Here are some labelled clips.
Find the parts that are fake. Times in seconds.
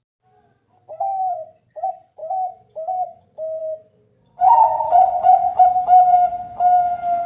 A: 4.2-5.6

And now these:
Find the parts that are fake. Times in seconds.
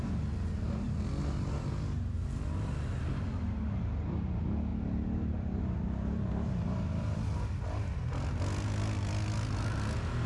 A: none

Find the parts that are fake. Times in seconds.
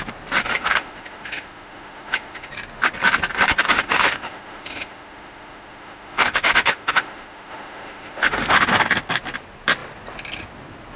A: 0.4-2.5; 3.7-8.7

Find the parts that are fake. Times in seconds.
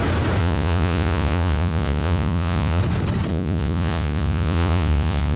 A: 0.4-2.8; 3.3-5.4